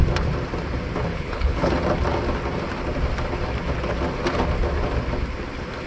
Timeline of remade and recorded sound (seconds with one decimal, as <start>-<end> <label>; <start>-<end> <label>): 0.0-1.1 recorded; 1.1-1.7 remade; 1.7-5.9 recorded